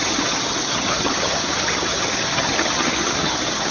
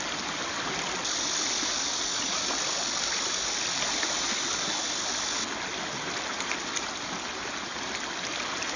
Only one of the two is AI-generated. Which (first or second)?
first